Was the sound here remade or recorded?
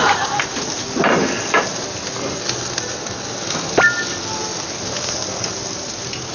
recorded